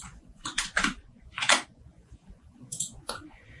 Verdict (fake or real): fake